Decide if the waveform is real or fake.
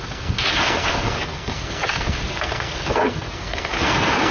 fake